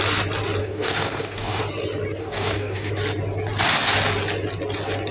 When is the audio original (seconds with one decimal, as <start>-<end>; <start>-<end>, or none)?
0.0-0.6; 1.6-2.2; 2.9-5.1